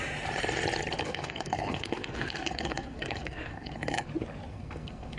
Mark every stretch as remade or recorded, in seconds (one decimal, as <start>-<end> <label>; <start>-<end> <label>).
0.0-1.0 recorded; 1.0-4.1 remade; 4.1-4.5 recorded; 4.5-5.2 remade